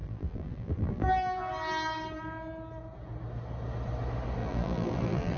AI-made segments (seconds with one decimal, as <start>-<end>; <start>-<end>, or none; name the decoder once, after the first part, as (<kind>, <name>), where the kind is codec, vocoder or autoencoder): 0.0-1.5 (vocoder, BigVGAN v2); 4.4-5.4